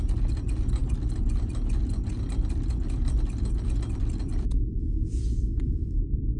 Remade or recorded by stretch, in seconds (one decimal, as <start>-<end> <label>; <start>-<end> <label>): 0.0-6.4 recorded